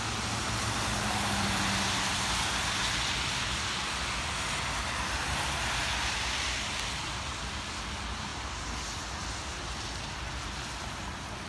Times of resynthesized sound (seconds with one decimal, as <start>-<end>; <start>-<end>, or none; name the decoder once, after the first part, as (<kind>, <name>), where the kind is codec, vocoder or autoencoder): none